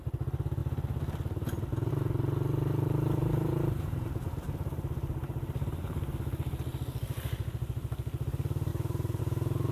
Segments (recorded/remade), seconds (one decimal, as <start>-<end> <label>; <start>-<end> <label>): 0.0-3.2 recorded; 3.2-6.1 remade; 6.1-6.7 recorded; 6.7-7.5 remade; 7.5-8.7 recorded; 8.7-9.2 remade; 9.2-9.7 recorded